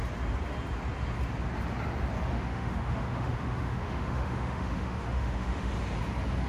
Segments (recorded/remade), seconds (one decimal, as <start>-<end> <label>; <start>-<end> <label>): 0.0-2.3 recorded; 2.3-5.7 remade; 5.7-6.5 recorded